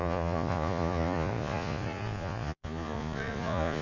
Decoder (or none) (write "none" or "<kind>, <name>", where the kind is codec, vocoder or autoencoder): vocoder, Vocos